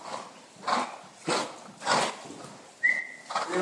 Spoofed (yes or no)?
no